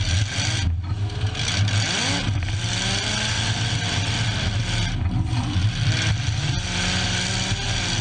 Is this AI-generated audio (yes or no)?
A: no